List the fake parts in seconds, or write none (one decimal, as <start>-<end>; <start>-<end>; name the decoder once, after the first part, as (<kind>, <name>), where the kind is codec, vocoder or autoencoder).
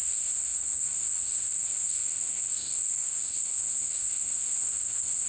0.0-5.3 (codec, SNAC)